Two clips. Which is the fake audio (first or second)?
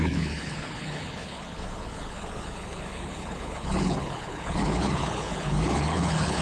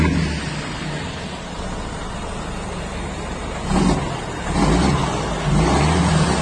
first